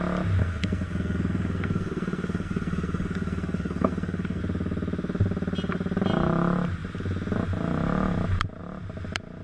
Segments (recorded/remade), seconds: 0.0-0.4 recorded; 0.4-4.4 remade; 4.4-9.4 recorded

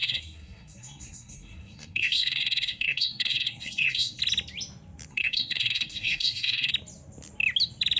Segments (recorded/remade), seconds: 0.0-4.2 remade; 4.2-5.1 recorded; 5.1-6.7 remade; 6.7-8.0 recorded